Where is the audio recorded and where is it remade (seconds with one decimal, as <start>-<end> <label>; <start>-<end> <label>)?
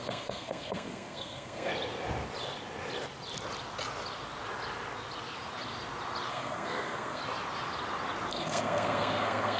0.0-1.7 remade; 1.7-6.3 recorded; 6.3-7.2 remade; 7.2-8.3 recorded; 8.3-9.6 remade